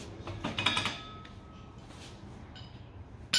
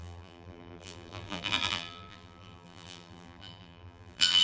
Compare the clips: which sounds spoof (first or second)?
second